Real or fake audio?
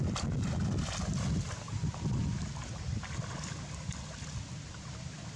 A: real